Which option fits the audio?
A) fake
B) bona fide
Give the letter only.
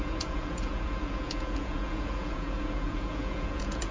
A